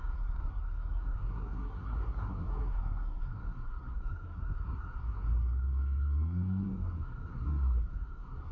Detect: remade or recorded remade